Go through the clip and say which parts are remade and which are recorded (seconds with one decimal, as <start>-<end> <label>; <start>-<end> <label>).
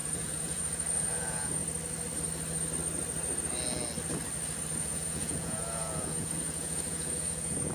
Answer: 0.0-1.6 remade; 1.6-4.8 recorded; 4.8-7.7 remade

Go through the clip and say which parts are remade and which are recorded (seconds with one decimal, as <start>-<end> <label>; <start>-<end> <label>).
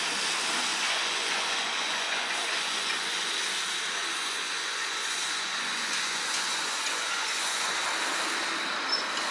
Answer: 0.0-0.7 recorded; 0.7-3.3 remade; 3.3-4.0 recorded; 4.0-7.8 remade; 7.8-9.3 recorded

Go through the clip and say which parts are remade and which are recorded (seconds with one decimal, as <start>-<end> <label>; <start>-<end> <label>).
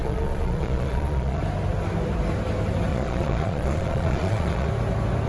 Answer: 0.0-1.4 remade; 1.4-2.9 recorded; 2.9-4.7 remade; 4.7-5.3 recorded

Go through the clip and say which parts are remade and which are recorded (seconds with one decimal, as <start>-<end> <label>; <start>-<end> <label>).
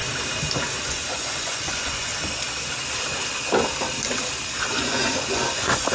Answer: 0.0-0.8 recorded; 0.8-2.1 remade; 2.1-4.7 recorded; 4.7-5.9 remade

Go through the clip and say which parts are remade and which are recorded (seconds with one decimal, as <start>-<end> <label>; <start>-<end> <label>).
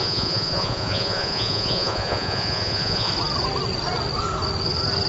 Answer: 0.0-3.1 remade; 3.1-5.1 recorded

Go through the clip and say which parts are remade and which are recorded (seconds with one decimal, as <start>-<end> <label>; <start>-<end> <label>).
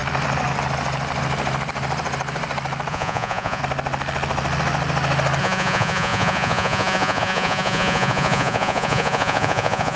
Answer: 0.0-2.9 recorded; 2.9-3.6 remade; 3.6-5.4 recorded; 5.4-10.0 remade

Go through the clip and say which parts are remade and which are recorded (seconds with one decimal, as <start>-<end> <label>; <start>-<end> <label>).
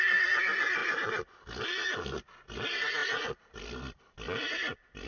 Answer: 0.0-5.1 recorded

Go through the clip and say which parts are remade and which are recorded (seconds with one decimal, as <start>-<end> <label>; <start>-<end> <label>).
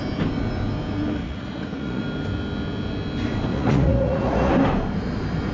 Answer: 0.0-1.2 recorded; 1.2-2.0 remade; 2.0-3.5 recorded; 3.5-4.5 remade; 4.5-5.5 recorded